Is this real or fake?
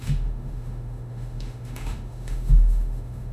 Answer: fake